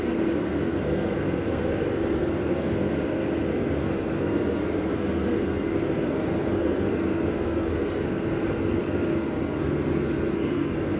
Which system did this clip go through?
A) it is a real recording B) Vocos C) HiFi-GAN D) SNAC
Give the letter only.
D